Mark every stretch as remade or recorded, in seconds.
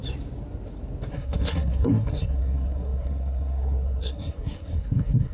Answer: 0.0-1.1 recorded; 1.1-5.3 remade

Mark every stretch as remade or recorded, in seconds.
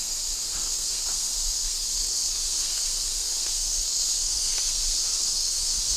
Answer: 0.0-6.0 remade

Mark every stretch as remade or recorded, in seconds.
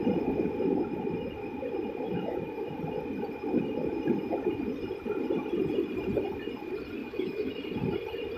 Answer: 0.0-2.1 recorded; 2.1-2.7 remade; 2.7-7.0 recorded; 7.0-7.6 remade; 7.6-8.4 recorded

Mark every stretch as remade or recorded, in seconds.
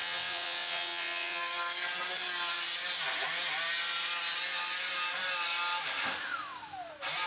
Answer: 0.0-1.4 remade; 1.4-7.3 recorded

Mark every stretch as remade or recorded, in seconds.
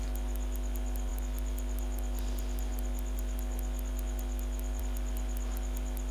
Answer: 0.0-6.1 recorded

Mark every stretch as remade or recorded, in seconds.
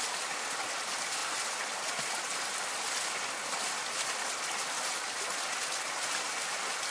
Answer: 0.0-6.9 recorded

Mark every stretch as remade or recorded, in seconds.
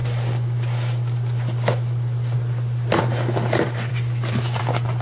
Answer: 0.0-5.0 recorded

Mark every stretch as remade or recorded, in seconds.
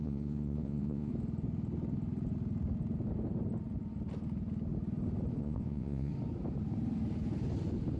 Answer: 0.0-1.1 remade; 1.1-5.4 recorded; 5.4-6.1 remade; 6.1-8.0 recorded